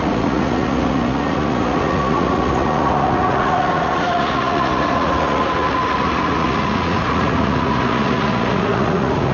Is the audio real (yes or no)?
no